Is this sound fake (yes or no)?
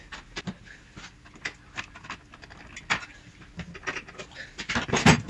no